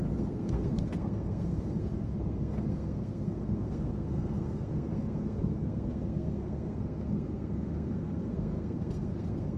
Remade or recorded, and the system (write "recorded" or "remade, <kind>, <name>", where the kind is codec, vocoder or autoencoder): remade, codec, SNAC